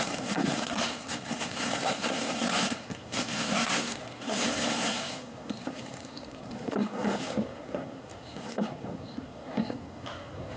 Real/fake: fake